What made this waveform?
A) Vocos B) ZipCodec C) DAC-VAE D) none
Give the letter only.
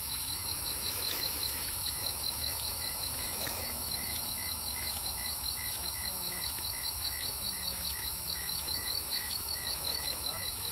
C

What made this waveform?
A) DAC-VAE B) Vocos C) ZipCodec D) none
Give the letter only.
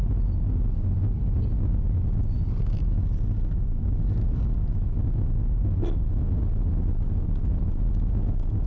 D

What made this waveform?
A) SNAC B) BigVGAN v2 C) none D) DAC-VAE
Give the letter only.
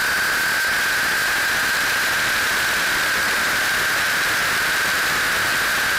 C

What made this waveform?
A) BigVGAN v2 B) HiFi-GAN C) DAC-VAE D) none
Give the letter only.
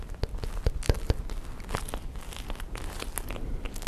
D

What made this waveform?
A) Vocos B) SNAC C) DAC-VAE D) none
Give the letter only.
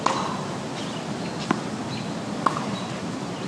D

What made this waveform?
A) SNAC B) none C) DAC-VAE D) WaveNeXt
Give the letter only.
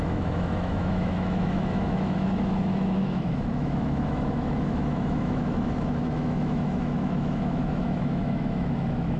C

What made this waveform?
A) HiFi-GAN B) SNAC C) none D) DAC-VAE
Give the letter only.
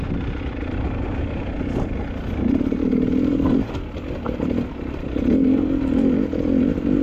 C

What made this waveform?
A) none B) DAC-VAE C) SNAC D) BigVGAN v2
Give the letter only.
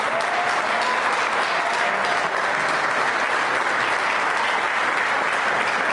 A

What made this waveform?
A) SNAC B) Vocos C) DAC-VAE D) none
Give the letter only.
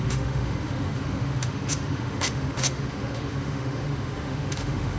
C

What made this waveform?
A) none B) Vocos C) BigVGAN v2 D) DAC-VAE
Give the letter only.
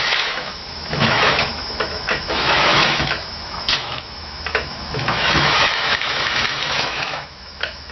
D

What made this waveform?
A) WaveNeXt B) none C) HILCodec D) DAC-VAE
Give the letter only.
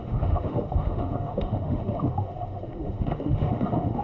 D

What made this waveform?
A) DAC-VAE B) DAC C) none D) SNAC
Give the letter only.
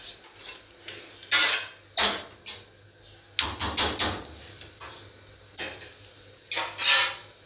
C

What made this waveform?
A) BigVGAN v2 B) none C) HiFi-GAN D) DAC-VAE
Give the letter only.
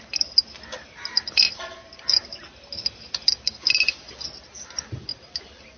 B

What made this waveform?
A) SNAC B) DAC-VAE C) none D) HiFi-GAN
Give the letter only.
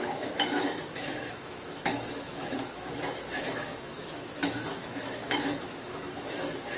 B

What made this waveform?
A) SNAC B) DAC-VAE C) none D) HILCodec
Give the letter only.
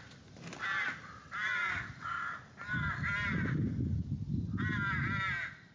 C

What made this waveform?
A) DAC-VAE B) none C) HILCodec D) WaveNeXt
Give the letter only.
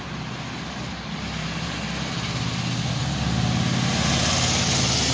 B